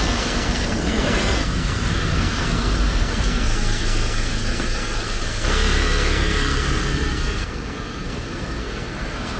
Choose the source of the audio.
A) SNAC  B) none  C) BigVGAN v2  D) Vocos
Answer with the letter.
A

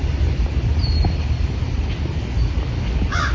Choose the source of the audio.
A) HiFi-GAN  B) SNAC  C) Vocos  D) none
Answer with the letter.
D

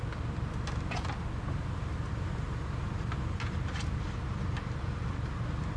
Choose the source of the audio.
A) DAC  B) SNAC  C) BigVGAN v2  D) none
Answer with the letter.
D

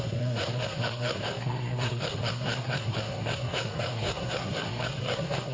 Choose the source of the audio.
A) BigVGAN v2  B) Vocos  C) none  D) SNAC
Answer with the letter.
D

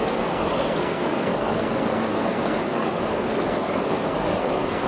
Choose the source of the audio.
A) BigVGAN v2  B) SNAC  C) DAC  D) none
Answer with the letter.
B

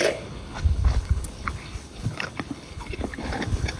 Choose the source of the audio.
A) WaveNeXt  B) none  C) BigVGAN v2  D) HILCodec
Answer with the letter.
D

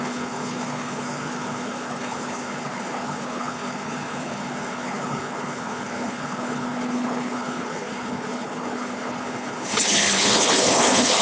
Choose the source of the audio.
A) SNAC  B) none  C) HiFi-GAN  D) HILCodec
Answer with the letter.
D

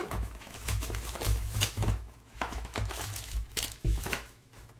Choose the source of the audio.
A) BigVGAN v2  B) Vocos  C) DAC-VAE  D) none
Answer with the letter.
C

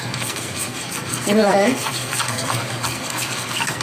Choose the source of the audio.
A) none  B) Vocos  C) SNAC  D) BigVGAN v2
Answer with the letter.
C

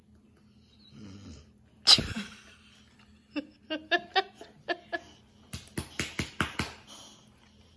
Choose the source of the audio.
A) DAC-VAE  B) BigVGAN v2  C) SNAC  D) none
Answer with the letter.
D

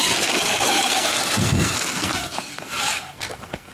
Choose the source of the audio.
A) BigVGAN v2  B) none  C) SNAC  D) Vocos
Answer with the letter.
C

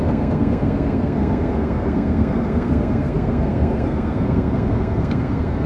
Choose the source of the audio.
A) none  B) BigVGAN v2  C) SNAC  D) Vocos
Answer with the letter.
C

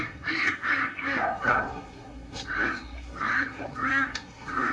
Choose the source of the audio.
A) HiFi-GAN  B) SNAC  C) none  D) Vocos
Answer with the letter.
B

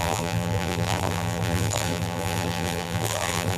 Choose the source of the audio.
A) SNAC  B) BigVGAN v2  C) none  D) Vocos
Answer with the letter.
B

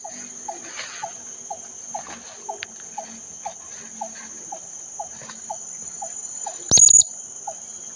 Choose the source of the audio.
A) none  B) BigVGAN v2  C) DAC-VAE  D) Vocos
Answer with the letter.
A